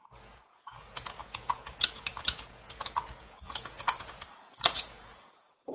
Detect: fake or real fake